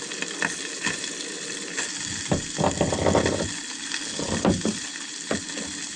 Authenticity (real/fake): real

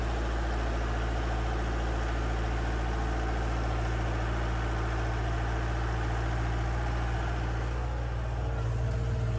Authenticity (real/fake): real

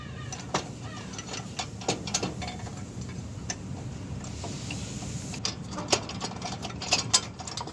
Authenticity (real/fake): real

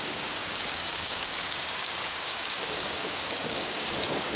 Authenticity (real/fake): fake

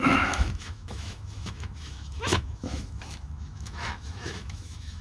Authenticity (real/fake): fake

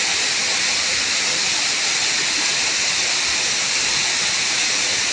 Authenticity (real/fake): real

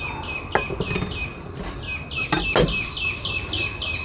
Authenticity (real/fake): real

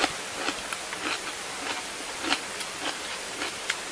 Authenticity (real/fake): real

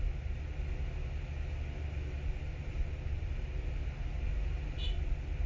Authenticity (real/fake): real